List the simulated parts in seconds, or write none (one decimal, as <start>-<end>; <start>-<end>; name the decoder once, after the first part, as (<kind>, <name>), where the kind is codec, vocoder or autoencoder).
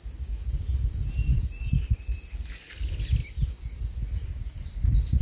none